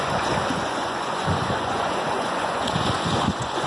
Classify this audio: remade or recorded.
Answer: remade